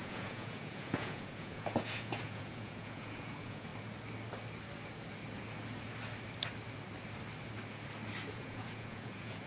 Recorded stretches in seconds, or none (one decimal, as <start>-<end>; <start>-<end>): 3.7-8.3